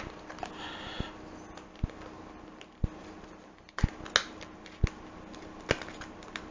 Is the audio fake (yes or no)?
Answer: no